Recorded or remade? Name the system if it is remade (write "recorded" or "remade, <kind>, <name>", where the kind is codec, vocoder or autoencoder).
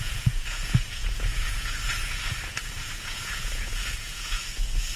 remade, vocoder, Vocos